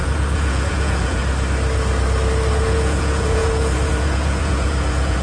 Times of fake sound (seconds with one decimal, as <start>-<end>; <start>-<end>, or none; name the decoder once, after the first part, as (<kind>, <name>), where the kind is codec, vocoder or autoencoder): 0.0-1.2 (vocoder, Vocos); 2.5-5.2

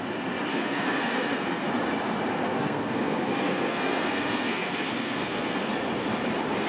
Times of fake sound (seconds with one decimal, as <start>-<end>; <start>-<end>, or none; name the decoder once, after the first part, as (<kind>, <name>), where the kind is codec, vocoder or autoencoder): 0.5-1.7 (codec, SNAC); 2.3-5.7

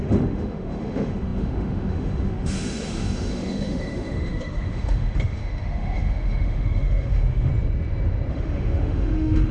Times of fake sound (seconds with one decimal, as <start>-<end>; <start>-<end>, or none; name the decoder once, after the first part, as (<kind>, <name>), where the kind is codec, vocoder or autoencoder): 0.0-7.5 (autoencoder, DAC-VAE); 8.3-9.5

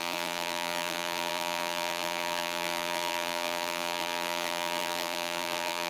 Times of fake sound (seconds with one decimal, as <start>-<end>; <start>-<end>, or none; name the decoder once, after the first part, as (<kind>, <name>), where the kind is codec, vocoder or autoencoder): 0.0-5.9 (vocoder, BigVGAN v2)

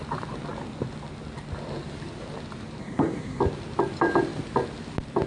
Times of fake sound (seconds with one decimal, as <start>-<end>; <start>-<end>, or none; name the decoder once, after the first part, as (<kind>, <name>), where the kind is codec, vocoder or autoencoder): 2.8-3.4 (codec, SNAC)

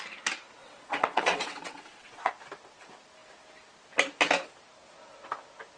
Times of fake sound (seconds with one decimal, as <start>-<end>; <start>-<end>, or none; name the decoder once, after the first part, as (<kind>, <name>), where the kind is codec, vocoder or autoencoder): 0.6-2.3 (vocoder, WaveNeXt)

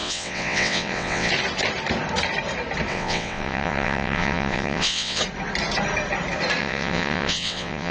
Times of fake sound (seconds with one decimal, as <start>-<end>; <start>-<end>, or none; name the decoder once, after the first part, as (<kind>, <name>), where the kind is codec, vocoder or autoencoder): 0.0-1.3 (vocoder, WaveNeXt); 2.9-5.2; 6.6-7.9